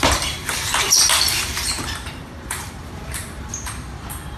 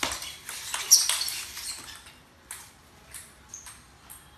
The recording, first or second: second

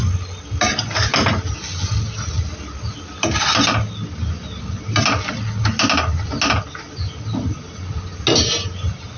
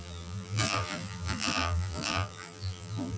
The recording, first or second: first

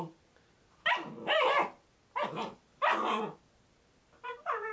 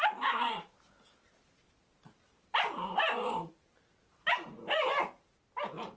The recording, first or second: first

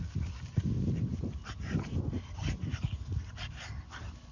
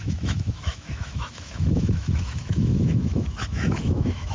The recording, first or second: first